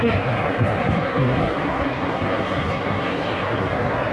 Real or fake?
fake